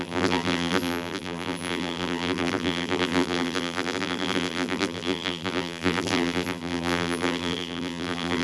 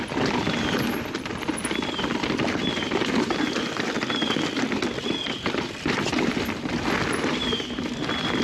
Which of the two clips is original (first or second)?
second